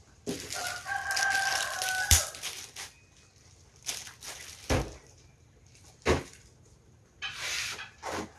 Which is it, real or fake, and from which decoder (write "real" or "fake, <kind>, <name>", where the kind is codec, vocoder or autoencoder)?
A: real